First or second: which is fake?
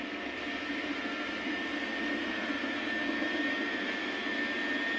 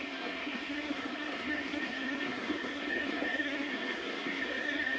second